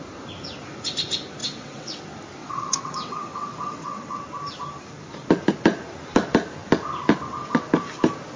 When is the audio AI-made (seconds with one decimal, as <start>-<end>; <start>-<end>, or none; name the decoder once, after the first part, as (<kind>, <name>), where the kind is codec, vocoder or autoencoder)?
1.4-2.0 (vocoder, WaveNeXt); 2.4-4.2